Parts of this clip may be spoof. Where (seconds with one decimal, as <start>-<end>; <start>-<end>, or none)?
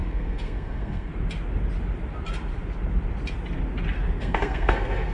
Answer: 0.0-1.1; 4.2-5.1